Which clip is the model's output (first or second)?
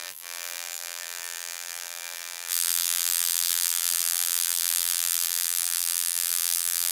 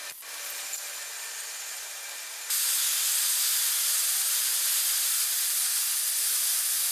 first